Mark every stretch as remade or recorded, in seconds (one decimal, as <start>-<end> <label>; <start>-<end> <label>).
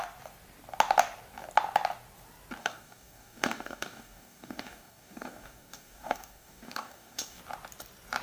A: 0.0-2.6 recorded; 2.6-7.4 remade; 7.4-8.2 recorded